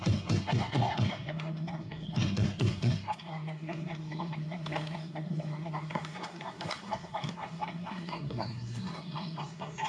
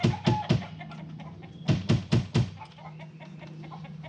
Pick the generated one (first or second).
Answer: first